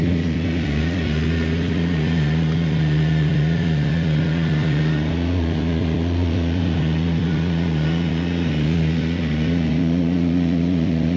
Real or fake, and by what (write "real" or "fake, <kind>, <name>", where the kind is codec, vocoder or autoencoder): fake, vocoder, Vocos